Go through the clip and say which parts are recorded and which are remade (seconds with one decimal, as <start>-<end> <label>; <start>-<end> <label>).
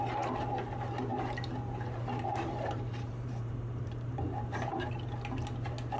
0.0-1.1 recorded; 1.1-4.7 remade; 4.7-6.0 recorded